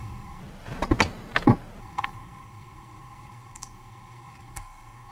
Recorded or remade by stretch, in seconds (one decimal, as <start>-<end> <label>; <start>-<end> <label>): 0.0-0.4 remade; 0.4-1.8 recorded; 1.8-5.1 remade

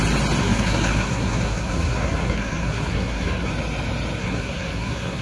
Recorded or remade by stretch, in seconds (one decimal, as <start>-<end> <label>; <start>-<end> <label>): 0.0-0.4 recorded; 0.4-3.5 remade; 3.5-4.2 recorded; 4.2-5.2 remade

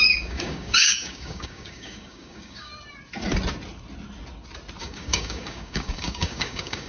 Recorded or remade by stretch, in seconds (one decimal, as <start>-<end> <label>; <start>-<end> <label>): 0.0-2.7 remade; 2.7-4.8 recorded; 4.8-6.9 remade

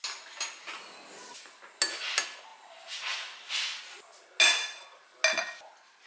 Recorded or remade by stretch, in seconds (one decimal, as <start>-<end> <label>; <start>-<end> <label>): 0.0-6.1 recorded

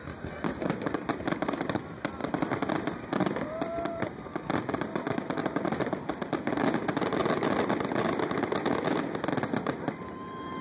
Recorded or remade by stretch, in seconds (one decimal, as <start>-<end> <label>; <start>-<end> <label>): 0.0-2.2 recorded; 2.2-6.6 remade; 6.6-10.6 recorded